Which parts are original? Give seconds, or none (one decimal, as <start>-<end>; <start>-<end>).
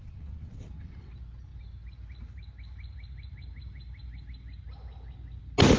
1.1-5.8